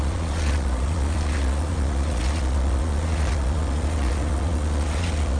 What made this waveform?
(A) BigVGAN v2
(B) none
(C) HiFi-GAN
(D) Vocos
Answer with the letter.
D